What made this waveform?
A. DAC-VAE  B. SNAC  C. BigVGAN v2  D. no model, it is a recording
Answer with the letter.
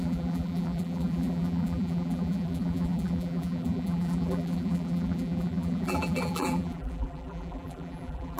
C